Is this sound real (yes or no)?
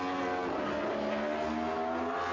yes